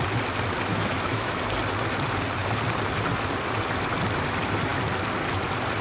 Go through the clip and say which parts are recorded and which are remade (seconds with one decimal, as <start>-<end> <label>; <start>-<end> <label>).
0.0-0.7 recorded; 0.7-1.3 remade; 1.3-5.8 recorded